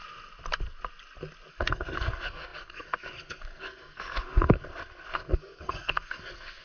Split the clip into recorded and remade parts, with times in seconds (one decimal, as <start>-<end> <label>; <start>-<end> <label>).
0.0-1.5 recorded; 1.5-6.6 remade